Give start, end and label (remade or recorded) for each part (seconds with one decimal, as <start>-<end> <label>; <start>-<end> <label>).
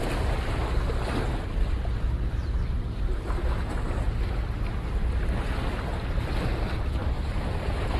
0.0-2.4 recorded; 2.4-3.8 remade; 3.8-7.0 recorded; 7.0-8.0 remade